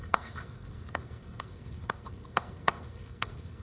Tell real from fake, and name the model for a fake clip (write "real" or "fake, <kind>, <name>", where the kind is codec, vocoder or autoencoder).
fake, codec, SNAC